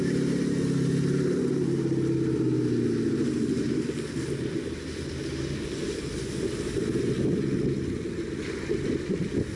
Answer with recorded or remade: recorded